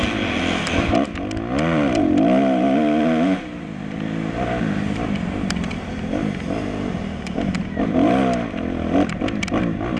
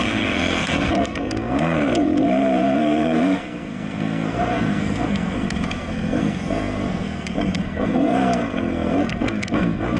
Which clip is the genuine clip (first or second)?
first